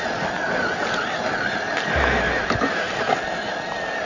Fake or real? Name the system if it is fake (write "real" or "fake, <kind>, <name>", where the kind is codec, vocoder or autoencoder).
real